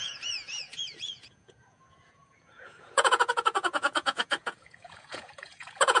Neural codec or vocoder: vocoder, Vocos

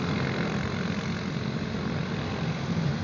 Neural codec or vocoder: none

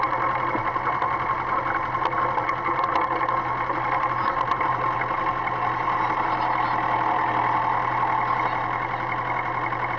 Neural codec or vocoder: none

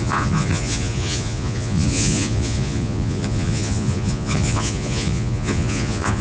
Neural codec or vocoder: vocoder, Vocos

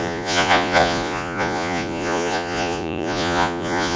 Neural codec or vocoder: vocoder, Vocos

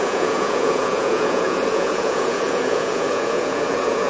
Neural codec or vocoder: vocoder, Vocos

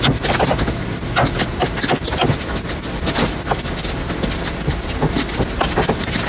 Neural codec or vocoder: none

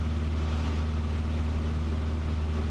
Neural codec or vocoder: none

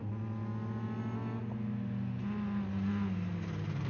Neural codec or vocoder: none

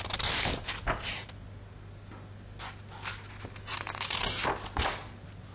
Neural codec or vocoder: none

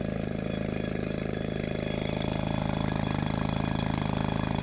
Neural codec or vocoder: none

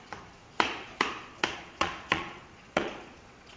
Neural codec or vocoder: vocoder, Vocos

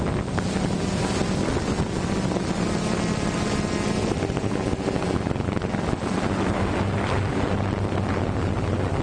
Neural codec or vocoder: none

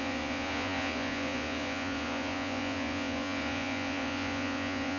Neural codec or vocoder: vocoder, Vocos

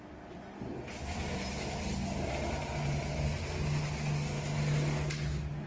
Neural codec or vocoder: none